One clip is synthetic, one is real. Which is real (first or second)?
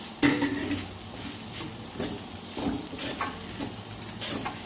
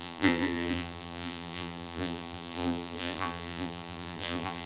first